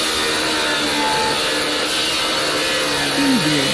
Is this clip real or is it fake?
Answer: real